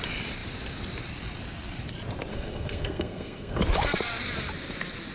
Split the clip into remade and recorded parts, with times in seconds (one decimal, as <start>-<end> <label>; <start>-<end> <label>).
0.0-2.3 recorded; 2.3-3.6 remade; 3.6-5.1 recorded